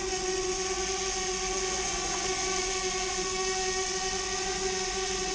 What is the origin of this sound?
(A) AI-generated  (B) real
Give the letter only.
A